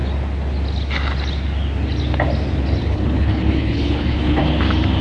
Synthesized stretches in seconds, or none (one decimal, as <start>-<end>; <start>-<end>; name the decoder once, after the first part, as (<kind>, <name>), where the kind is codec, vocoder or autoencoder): 2.8-4.4 (codec, HILCodec)